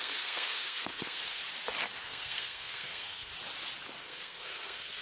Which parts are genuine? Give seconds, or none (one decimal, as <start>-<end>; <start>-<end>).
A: 1.4-2.0; 3.3-4.0